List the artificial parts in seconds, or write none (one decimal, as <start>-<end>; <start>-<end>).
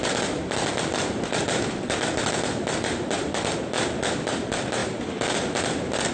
none